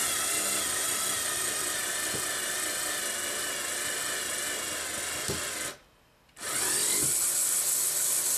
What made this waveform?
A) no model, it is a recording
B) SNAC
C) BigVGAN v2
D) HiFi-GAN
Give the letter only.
A